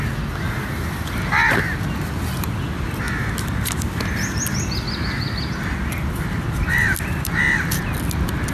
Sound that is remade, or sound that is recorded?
recorded